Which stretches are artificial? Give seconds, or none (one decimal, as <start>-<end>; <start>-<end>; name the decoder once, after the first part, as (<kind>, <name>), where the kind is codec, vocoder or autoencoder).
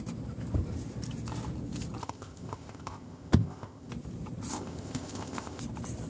2.0-3.9 (codec, ZipCodec); 4.5-5.6